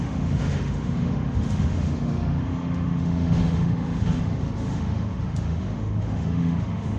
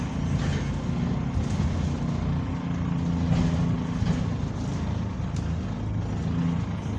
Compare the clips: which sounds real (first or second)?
second